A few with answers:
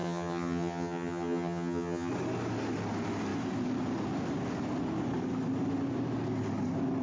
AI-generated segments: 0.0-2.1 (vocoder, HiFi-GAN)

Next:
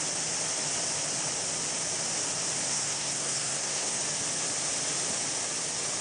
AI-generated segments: 2.7-4.0 (codec, SNAC)

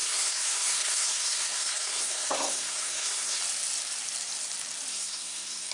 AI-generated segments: 0.0-3.4 (codec, SNAC); 4.9-5.7

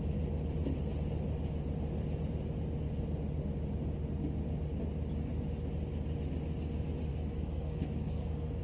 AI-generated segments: 7.1-8.6 (codec, SNAC)

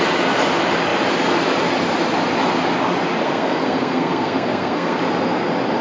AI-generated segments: 3.2-5.0 (codec, SNAC)